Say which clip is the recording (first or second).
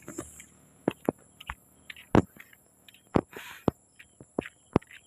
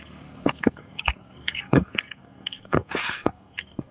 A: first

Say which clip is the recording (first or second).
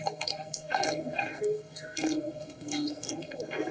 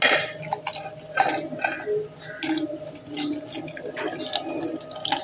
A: second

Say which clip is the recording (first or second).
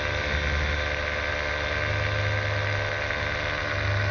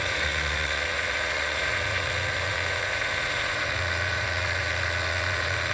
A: first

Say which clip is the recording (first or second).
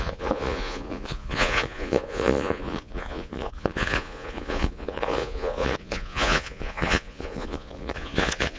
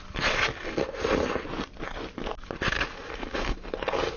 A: second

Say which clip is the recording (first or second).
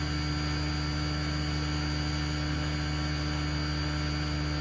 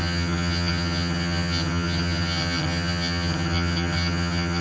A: first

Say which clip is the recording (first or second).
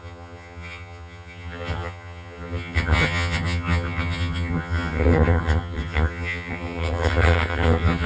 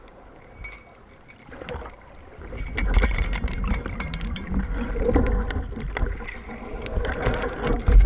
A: second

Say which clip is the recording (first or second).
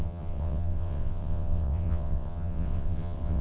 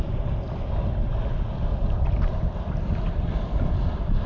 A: second